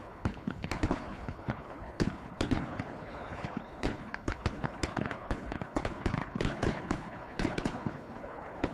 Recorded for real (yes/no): no